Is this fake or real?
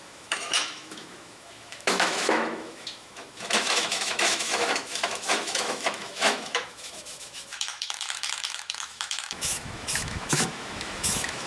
fake